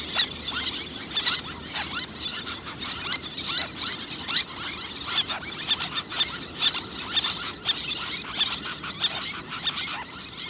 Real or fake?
real